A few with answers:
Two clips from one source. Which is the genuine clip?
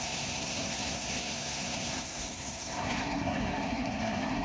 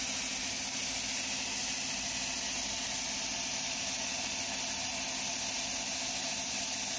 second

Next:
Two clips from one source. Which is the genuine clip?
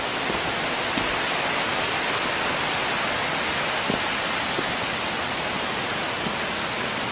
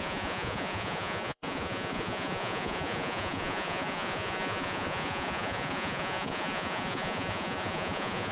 first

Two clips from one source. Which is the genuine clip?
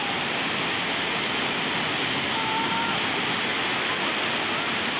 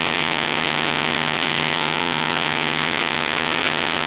first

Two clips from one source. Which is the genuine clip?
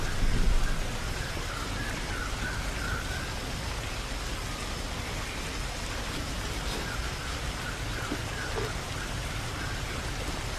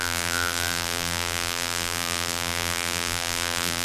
first